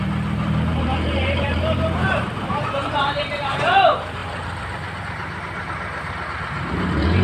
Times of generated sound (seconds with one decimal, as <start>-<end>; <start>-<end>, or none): 0.0-4.2; 5.0-7.2